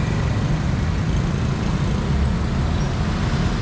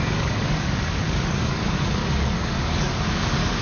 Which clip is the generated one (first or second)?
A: second